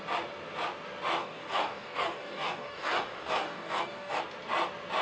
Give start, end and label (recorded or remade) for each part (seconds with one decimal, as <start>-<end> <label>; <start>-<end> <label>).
0.0-1.2 recorded; 1.2-4.2 remade; 4.2-5.0 recorded